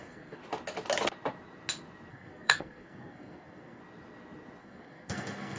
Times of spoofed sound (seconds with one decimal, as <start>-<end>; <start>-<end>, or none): 0.0-0.4; 2.1-3.8; 4.6-5.6